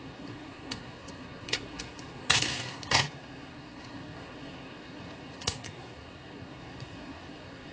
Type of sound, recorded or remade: remade